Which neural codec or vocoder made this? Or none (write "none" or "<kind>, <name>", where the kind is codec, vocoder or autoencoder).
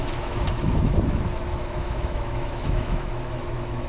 autoencoder, DAC-VAE